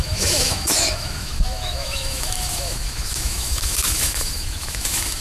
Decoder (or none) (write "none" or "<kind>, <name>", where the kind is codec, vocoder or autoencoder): autoencoder, DAC-VAE